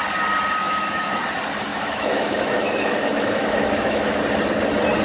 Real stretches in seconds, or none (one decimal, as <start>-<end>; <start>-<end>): 0.0-0.6; 1.2-1.7; 4.2-5.0